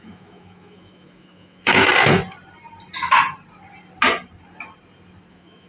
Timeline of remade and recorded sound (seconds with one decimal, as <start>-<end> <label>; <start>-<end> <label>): 0.0-1.9 remade; 1.9-5.3 recorded; 5.3-5.7 remade